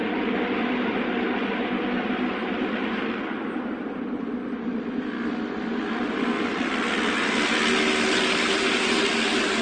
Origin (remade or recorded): recorded